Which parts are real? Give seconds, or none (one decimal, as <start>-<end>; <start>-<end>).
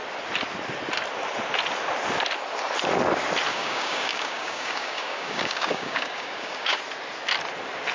0.0-3.5; 6.8-7.9